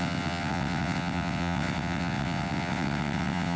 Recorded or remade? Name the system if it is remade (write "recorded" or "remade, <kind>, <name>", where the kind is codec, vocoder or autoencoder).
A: remade, vocoder, WaveNeXt